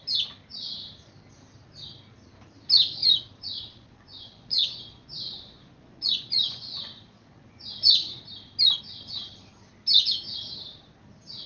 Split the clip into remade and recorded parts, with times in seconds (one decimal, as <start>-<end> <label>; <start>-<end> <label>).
0.0-3.0 recorded; 3.0-8.2 remade; 8.2-11.5 recorded